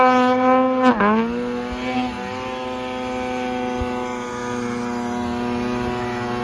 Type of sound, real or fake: real